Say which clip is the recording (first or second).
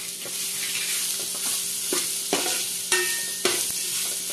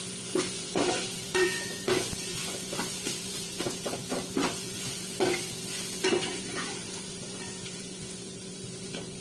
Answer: first